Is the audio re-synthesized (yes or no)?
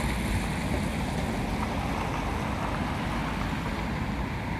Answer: no